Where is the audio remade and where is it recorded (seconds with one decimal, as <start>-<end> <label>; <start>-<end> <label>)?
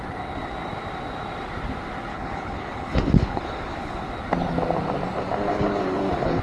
0.0-2.1 recorded; 2.1-4.1 remade; 4.1-5.5 recorded; 5.5-6.4 remade